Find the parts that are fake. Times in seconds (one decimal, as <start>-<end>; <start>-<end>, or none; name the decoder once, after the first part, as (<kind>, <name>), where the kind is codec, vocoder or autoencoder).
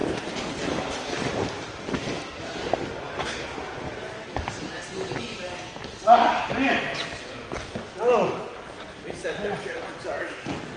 none